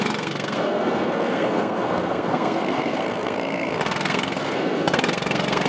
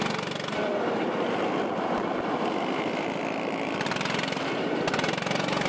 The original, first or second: second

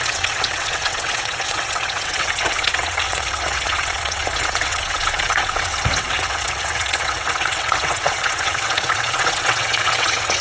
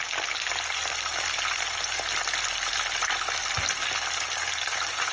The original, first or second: second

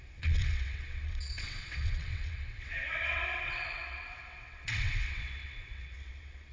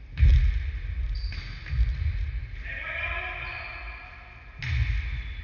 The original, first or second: second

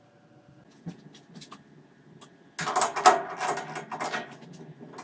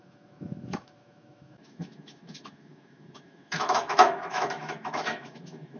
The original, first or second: first